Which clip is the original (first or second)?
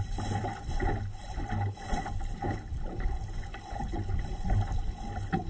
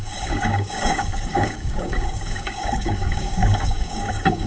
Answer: first